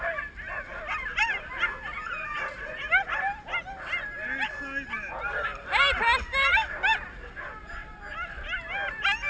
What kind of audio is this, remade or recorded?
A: recorded